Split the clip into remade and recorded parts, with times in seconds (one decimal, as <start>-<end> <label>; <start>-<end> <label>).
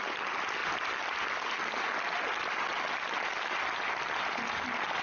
0.0-5.0 recorded